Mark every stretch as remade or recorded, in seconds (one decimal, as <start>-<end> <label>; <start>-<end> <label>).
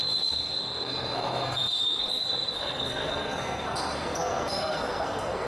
0.0-5.5 remade